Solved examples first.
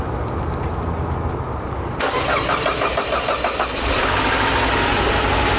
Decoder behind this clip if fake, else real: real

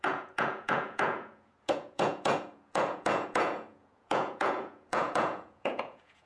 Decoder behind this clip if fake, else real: fake, vocoder, Vocos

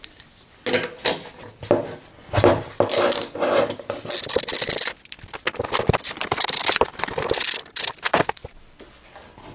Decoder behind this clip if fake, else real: real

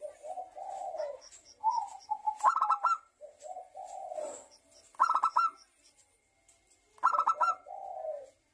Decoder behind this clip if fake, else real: real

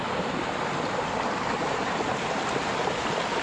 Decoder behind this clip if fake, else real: real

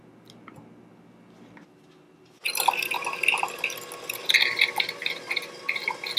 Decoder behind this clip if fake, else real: real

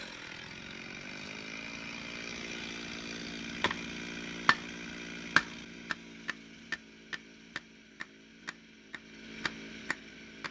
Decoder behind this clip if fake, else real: real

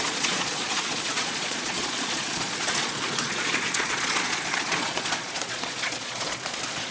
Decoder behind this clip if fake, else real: fake, vocoder, Vocos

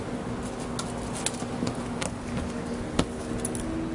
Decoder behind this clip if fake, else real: real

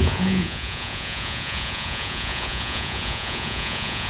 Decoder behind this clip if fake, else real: fake, vocoder, Vocos